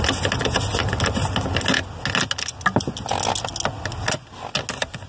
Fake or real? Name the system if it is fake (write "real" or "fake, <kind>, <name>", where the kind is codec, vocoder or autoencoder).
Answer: real